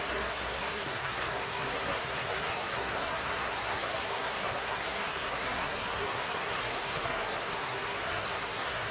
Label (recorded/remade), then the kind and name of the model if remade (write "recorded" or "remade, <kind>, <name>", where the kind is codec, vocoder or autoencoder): remade, codec, SNAC